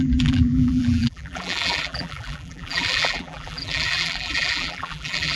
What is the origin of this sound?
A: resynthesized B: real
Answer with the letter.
A